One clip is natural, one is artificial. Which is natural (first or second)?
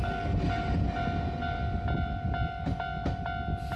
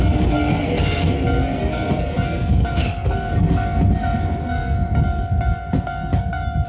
first